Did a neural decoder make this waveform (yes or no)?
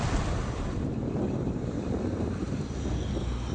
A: yes